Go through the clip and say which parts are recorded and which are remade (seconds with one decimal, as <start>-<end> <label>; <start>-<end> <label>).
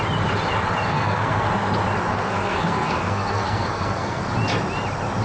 0.0-0.9 recorded; 0.9-1.5 remade; 1.5-2.1 recorded; 2.1-4.2 remade; 4.2-5.2 recorded